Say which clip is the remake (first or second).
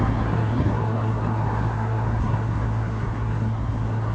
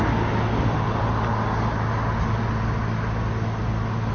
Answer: first